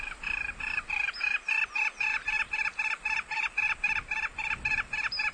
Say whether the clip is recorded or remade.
recorded